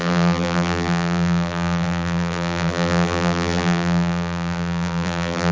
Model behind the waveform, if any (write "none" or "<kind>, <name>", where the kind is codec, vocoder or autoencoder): vocoder, BigVGAN v2